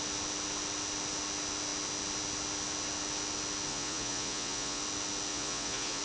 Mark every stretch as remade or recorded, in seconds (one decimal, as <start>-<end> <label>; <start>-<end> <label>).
0.0-3.7 recorded; 3.7-4.8 remade; 4.8-5.3 recorded; 5.3-6.0 remade